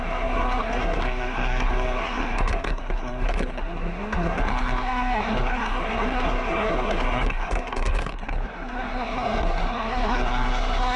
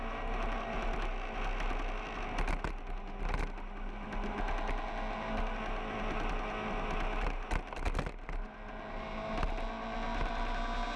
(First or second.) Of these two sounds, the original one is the second